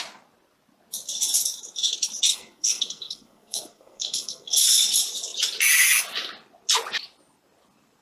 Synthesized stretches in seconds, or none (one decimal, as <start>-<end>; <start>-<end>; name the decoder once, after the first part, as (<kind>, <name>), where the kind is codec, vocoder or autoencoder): 2.3-4.6 (codec, SNAC)